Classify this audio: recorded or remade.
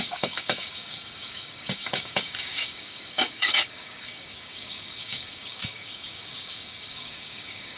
remade